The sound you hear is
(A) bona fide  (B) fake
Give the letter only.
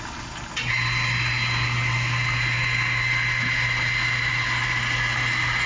A